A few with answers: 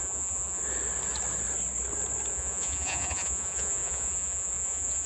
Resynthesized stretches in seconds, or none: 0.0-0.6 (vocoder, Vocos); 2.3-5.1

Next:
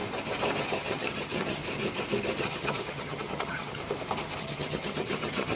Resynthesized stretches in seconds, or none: 0.6-1.6 (vocoder, HiFi-GAN); 2.4-3.8; 4.4-5.6

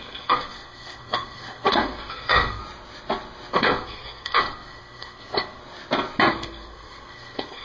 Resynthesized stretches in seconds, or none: 0.0-2.6 (codec, SNAC); 3.5-5.6; 6.3-7.6